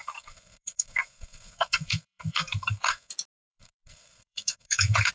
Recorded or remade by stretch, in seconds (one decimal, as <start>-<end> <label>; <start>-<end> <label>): 0.0-3.1 remade; 3.1-3.5 recorded; 3.5-5.1 remade